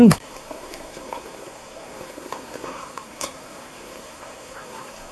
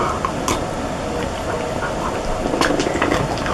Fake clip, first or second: first